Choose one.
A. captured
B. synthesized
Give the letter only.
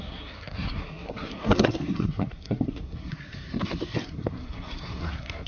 B